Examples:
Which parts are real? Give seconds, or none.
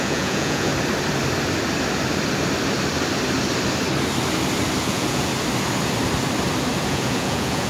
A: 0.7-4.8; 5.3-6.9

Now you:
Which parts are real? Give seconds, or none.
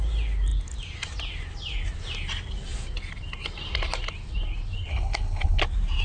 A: 0.0-4.9; 5.6-6.0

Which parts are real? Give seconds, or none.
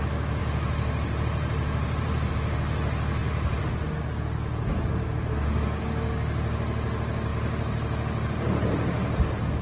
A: 0.0-0.4; 2.3-3.2; 3.7-7.3; 9.2-9.6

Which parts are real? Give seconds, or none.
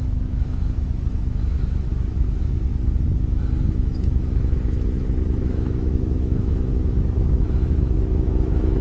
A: 2.7-3.7